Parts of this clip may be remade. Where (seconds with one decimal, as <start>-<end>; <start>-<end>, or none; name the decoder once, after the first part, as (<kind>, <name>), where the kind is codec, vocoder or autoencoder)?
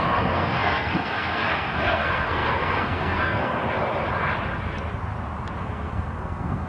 0.0-3.6 (codec, SNAC); 5.6-6.7